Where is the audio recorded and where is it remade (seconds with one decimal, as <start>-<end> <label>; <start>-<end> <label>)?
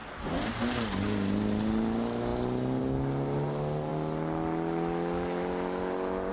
0.0-6.3 recorded